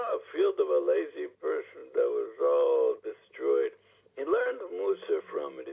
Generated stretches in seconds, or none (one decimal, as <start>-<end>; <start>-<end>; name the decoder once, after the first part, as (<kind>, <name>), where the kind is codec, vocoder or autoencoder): none